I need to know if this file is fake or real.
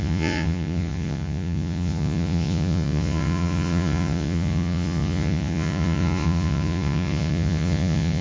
fake